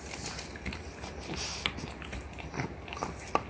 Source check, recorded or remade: recorded